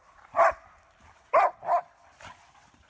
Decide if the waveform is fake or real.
real